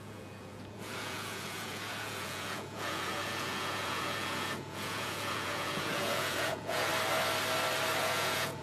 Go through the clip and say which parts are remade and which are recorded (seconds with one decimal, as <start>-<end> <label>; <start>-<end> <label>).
0.0-6.9 remade; 6.9-8.0 recorded; 8.0-8.6 remade